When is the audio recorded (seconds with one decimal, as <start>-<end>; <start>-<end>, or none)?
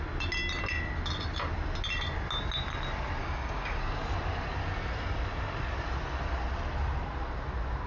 0.0-3.2; 3.8-7.9